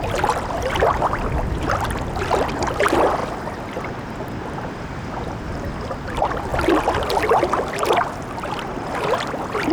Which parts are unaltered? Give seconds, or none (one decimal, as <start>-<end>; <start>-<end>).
0.0-9.7